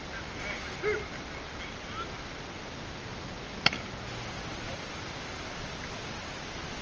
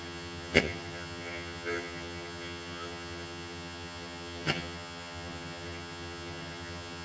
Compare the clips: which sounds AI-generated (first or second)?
second